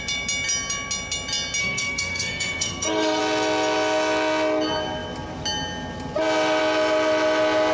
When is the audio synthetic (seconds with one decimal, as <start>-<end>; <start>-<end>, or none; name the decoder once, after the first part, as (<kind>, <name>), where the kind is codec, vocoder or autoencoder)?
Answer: 1.6-3.2 (codec, SNAC)